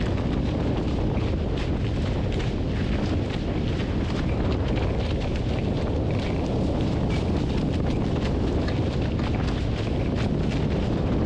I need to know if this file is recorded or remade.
recorded